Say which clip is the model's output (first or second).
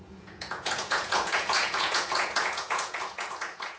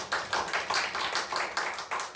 first